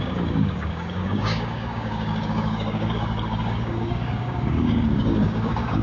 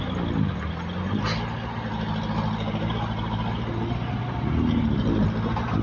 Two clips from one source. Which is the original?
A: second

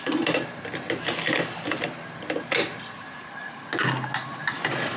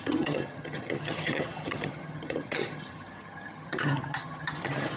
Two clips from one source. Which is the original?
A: first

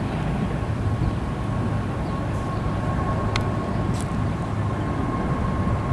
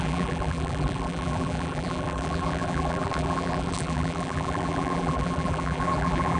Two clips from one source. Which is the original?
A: first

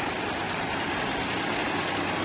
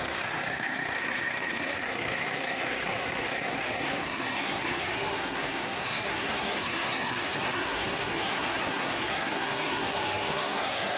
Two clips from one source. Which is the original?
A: first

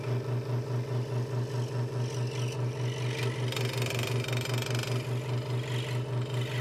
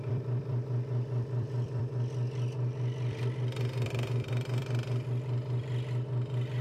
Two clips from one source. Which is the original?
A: first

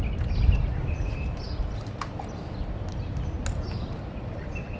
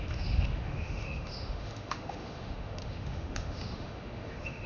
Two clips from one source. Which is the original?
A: first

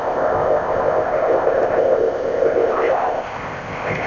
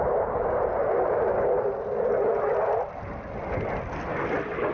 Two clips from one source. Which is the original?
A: second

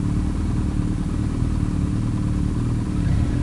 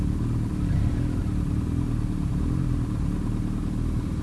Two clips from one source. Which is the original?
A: second